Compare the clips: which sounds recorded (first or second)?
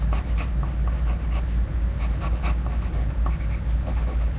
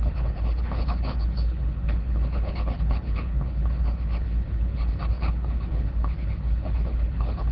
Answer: first